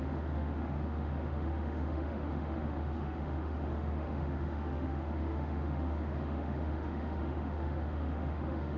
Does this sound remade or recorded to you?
remade